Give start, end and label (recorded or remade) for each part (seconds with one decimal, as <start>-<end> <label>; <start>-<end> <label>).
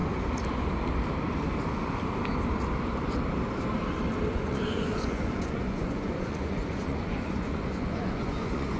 0.0-4.3 recorded; 4.3-8.8 remade